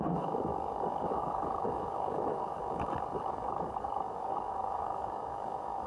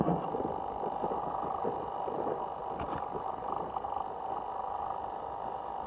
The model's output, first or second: first